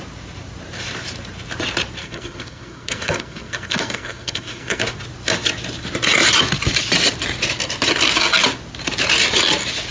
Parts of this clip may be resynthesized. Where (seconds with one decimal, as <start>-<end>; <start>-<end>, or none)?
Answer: 2.0-4.8